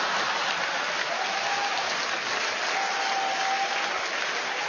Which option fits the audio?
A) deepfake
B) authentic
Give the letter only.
B